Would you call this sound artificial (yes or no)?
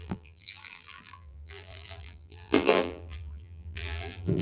yes